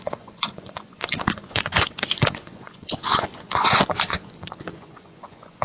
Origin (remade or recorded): remade